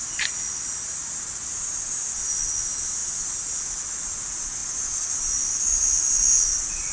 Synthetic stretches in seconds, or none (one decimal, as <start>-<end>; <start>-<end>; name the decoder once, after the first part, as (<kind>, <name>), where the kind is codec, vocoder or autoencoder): none